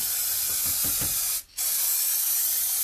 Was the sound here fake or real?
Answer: real